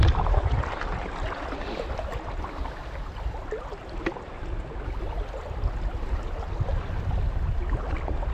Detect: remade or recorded recorded